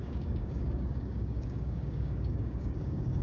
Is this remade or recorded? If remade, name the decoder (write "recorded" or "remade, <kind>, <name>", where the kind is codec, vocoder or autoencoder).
remade, codec, DAC